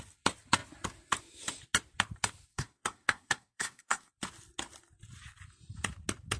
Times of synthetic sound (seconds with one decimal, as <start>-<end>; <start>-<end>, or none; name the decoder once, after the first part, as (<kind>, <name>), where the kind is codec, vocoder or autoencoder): 2.5-4.1 (codec, SNAC)